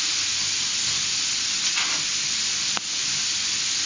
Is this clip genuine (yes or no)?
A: yes